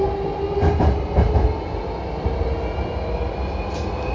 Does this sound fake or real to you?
real